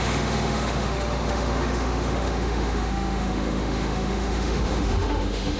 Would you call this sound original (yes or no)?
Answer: no